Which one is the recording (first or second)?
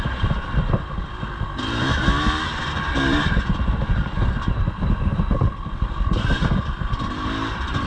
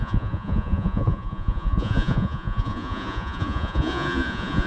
first